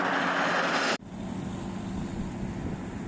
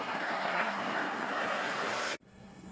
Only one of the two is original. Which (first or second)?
first